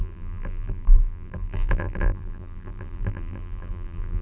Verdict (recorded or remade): remade